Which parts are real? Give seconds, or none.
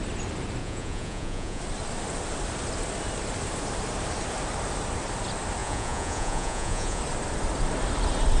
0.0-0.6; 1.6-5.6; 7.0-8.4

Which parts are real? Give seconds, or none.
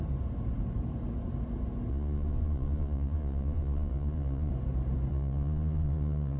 0.0-1.9; 4.5-5.1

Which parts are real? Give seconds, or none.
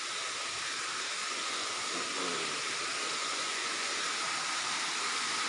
0.0-1.2; 1.8-3.2; 4.0-5.5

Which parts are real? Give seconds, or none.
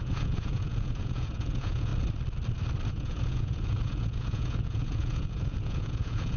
1.9-2.9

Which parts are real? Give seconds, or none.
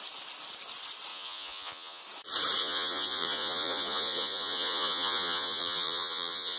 0.0-1.1; 2.0-2.6